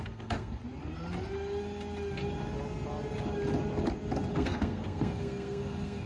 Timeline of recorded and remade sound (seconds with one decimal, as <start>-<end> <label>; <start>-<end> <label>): 0.0-0.6 remade; 0.6-4.3 recorded; 4.3-6.1 remade